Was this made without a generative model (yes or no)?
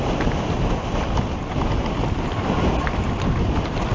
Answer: yes